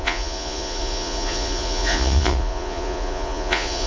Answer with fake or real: fake